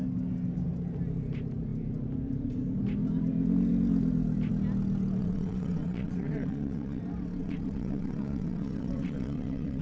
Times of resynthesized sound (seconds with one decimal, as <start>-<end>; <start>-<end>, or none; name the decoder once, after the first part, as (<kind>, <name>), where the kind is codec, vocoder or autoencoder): 5.2-7.0 (vocoder, WaveNeXt); 7.4-9.8

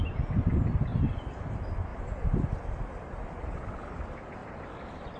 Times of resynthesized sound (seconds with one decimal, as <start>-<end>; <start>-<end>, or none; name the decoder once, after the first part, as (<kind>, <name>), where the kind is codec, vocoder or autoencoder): 0.9-1.5 (vocoder, BigVGAN v2); 1.9-4.0; 4.4-5.2

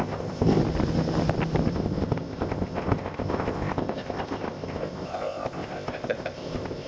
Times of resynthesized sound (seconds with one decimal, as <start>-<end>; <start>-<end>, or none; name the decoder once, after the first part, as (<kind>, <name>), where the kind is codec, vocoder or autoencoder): 0.0-0.6 (codec, ZipCodec); 1.7-6.9

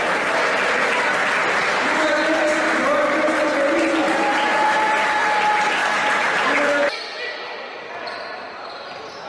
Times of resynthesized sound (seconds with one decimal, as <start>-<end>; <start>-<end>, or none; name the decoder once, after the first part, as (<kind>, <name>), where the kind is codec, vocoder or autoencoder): none

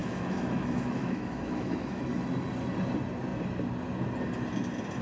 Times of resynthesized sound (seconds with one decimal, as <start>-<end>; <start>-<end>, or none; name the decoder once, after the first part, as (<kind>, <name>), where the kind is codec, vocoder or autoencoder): 0.0-2.0 (autoencoder, DAC-VAE)